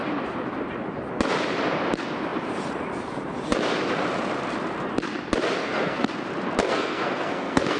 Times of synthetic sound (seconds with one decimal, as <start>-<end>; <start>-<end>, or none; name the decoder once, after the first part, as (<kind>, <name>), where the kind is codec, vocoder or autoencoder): 5.6-6.1 (codec, SNAC); 6.6-7.8